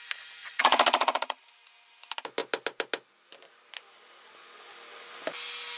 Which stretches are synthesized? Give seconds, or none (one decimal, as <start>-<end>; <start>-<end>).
0.4-1.5